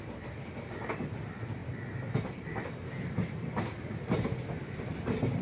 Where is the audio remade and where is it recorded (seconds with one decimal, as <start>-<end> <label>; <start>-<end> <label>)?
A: 0.0-5.4 recorded